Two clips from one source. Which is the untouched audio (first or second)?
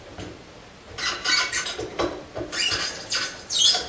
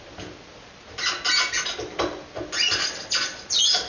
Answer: second